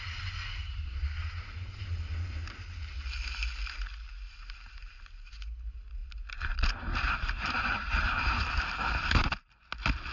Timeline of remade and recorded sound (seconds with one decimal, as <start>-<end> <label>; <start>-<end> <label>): 0.0-6.0 recorded; 6.0-9.6 remade; 9.6-10.1 recorded